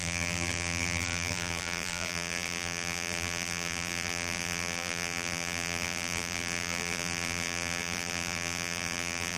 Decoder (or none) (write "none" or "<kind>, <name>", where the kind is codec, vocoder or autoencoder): vocoder, BigVGAN v2